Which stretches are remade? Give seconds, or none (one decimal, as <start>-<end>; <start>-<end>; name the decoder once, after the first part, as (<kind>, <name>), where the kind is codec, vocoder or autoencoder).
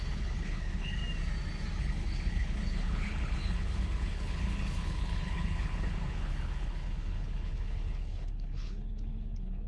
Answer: 0.0-1.0 (codec, HILCodec); 1.8-9.7